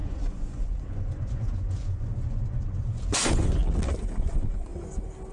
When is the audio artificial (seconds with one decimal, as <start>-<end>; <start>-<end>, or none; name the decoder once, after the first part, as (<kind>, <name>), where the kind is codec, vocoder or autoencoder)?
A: 0.0-3.6 (vocoder, Vocos); 4.2-4.7